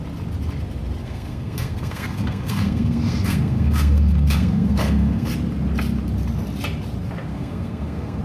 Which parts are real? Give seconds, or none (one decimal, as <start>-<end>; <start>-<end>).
0.0-1.0; 5.3-7.3